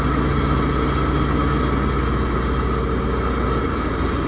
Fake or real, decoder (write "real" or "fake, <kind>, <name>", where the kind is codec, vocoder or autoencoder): real